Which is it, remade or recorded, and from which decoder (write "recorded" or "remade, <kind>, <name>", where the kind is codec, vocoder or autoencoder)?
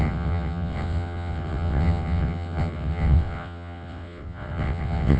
remade, vocoder, WaveNeXt